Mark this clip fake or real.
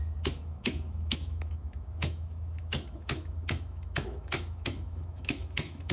fake